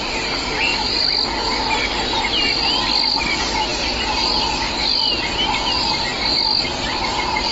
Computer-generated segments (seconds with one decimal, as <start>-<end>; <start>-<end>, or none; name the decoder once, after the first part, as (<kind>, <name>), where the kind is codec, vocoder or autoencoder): none